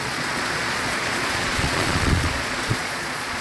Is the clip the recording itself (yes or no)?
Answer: no